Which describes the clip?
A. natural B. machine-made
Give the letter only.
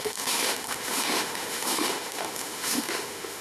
B